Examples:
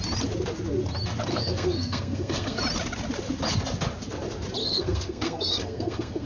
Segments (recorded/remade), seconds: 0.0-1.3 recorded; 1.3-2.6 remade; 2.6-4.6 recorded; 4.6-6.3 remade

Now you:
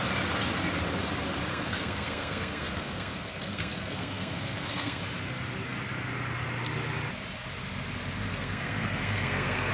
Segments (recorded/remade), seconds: 0.0-1.5 recorded; 1.5-5.0 remade; 5.0-8.3 recorded; 8.3-9.7 remade

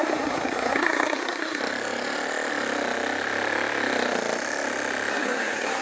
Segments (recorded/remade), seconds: 0.0-1.6 remade; 1.6-5.1 recorded; 5.1-5.8 remade

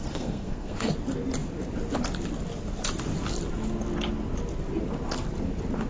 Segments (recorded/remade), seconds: 0.0-0.9 remade; 0.9-5.9 recorded

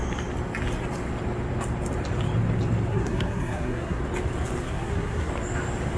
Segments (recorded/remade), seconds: 0.0-2.9 recorded; 2.9-4.0 remade; 4.0-4.6 recorded; 4.6-5.3 remade; 5.3-6.0 recorded

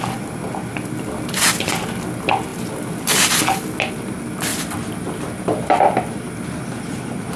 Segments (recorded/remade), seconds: 0.0-7.4 recorded